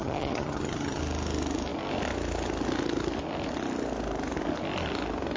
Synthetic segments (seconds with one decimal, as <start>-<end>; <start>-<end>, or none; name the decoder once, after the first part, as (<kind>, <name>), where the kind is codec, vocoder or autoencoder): 0.0-1.0 (vocoder, HiFi-GAN)